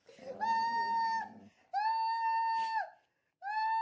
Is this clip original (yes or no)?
yes